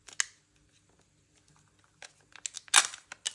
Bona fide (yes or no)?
yes